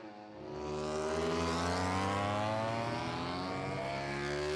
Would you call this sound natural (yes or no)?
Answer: yes